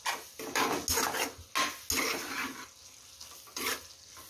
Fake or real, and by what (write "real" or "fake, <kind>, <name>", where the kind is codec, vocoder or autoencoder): real